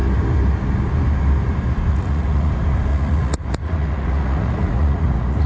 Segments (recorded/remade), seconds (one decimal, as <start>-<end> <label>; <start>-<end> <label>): 0.0-1.9 recorded; 1.9-2.5 remade; 2.5-2.9 recorded; 2.9-5.5 remade